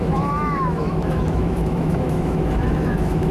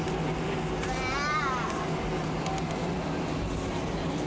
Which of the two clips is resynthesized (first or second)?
first